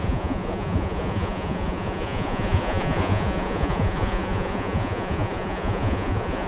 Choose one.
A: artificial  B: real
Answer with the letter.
A